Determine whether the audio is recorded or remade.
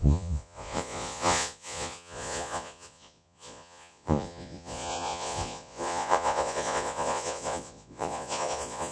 remade